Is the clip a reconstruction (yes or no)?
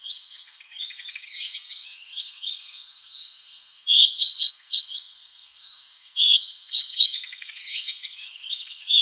yes